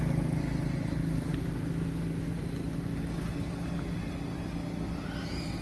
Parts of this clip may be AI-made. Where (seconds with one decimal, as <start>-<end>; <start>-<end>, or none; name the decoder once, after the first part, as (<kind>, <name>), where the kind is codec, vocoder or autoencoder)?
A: none